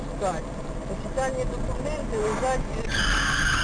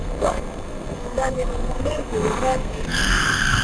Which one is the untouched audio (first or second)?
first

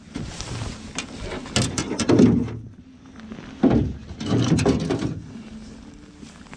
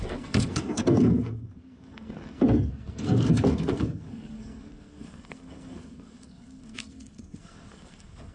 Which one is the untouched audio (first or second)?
first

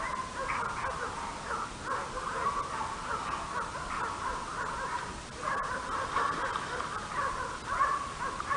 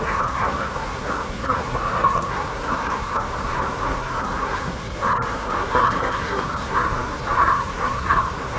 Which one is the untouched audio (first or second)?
first